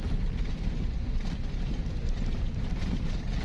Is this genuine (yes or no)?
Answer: yes